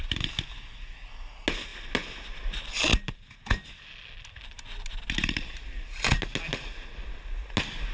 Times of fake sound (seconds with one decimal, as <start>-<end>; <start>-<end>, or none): none